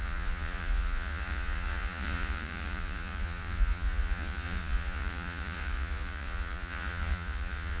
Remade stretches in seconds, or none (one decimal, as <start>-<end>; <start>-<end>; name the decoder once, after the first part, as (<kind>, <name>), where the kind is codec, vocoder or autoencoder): 0.0-7.8 (vocoder, Vocos)